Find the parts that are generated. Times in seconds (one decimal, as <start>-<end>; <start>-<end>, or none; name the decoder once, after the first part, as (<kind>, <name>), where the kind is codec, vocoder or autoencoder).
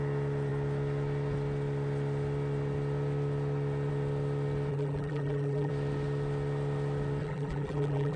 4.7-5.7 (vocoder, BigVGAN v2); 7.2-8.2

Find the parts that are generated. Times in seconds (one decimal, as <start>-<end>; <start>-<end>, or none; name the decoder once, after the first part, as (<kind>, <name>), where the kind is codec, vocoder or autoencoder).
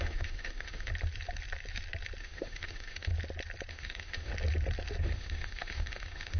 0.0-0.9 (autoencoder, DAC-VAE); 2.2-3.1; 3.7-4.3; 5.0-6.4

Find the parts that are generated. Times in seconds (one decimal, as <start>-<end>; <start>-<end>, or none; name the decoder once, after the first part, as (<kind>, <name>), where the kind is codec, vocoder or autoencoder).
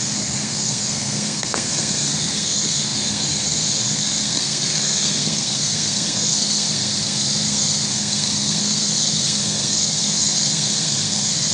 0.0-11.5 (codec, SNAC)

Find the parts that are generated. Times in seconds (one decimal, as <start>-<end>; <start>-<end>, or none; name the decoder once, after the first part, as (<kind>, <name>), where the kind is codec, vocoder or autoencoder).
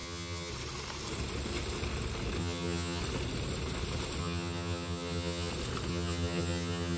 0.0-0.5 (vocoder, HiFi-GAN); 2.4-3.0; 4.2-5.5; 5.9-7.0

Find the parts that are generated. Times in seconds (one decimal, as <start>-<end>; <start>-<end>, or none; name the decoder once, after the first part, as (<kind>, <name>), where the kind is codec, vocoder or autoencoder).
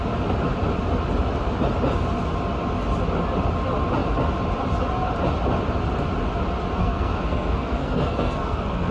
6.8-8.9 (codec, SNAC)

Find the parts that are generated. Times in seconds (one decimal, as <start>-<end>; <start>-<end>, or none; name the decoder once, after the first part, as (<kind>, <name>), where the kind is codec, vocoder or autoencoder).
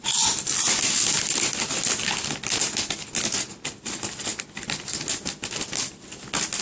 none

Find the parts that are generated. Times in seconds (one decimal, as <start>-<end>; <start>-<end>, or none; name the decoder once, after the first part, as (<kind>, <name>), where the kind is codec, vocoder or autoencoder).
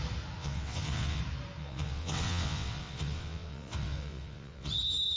0.4-1.2 (vocoder, WaveNeXt); 1.6-4.7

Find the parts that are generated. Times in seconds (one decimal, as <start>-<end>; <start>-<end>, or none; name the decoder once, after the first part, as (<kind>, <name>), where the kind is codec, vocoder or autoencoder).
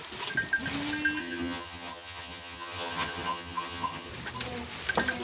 1.2-4.1 (vocoder, HiFi-GAN)